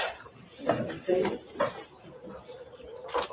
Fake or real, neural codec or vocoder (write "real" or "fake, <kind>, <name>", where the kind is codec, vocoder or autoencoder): fake, vocoder, BigVGAN v2